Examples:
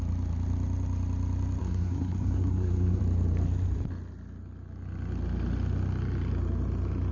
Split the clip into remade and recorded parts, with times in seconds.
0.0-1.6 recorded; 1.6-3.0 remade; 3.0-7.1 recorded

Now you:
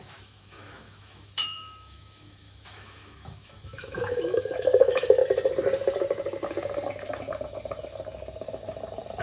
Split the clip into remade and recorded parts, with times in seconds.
0.0-5.2 remade; 5.2-9.2 recorded